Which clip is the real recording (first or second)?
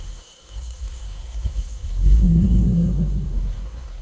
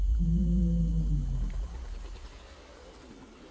second